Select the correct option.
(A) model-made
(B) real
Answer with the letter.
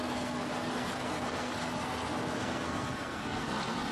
A